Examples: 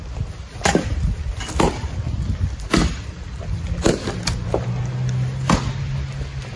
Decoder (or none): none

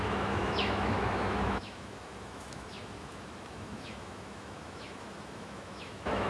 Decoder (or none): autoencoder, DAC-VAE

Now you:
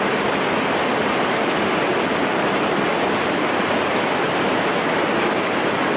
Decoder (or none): none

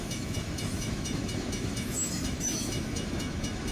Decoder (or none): autoencoder, DAC-VAE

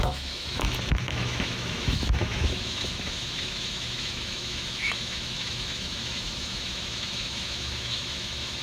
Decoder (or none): autoencoder, DAC-VAE